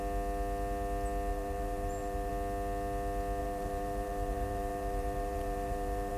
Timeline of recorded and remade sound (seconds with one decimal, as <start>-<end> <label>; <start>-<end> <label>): 0.0-1.3 recorded; 1.3-2.3 remade; 2.3-3.4 recorded; 3.4-6.2 remade